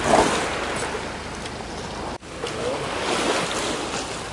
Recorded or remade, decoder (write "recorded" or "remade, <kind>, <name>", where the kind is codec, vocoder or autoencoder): recorded